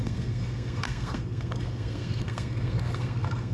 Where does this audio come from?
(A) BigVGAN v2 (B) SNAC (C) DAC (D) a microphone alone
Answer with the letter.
B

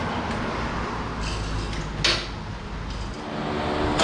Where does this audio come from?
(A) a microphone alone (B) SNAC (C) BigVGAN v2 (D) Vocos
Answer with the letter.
A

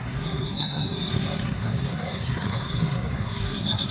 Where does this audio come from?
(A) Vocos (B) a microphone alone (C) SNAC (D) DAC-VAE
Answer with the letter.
C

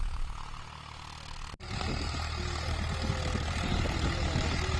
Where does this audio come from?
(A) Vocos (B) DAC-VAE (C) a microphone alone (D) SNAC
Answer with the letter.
C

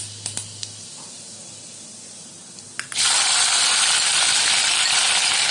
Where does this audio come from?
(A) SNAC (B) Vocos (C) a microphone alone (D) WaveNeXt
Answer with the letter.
C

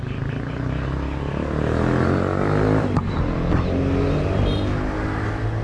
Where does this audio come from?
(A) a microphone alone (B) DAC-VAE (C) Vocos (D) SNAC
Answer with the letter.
A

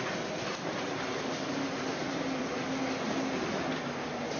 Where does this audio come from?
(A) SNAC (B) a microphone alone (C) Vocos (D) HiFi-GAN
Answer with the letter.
B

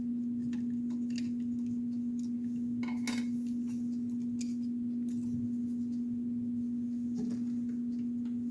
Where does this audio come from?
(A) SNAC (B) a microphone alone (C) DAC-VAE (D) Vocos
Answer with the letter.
B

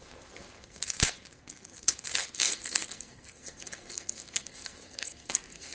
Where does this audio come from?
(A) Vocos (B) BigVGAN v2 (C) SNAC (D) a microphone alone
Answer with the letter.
C